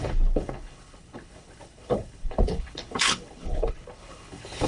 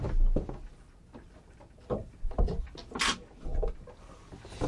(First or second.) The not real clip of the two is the first